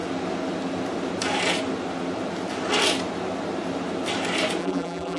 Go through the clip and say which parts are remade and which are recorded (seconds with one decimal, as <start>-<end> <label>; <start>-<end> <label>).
0.0-4.6 recorded; 4.6-5.2 remade